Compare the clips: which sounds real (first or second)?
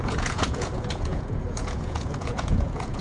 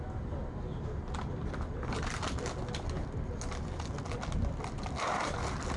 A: second